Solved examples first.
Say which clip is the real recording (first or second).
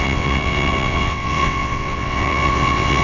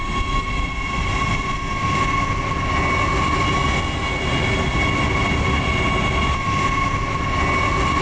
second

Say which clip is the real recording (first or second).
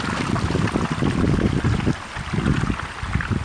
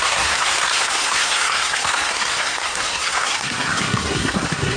first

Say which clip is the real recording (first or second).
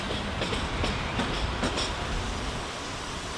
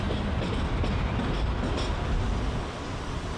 second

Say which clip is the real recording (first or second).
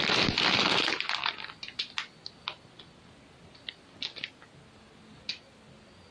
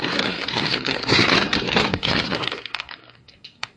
first